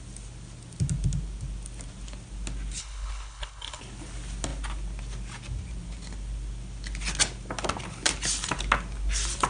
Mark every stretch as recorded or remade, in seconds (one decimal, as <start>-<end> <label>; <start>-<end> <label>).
0.0-2.8 recorded; 2.8-3.8 remade; 3.8-9.5 recorded